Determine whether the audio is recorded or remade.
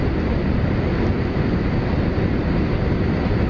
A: recorded